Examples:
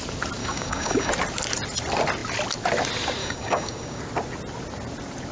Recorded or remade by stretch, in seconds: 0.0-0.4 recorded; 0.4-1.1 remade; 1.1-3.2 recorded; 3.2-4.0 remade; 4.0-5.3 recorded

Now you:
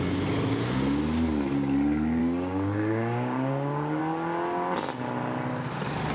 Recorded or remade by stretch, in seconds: 0.0-2.2 recorded; 2.2-4.0 remade; 4.0-6.1 recorded

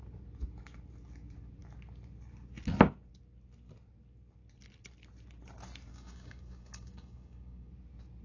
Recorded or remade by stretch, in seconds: 0.0-5.9 recorded; 5.9-7.7 remade; 7.7-8.2 recorded

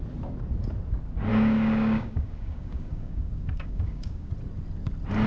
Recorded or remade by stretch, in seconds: 0.0-1.3 recorded; 1.3-4.3 remade; 4.3-5.3 recorded